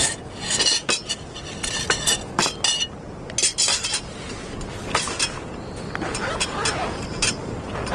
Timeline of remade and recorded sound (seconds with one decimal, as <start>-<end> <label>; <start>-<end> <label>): 0.0-7.9 recorded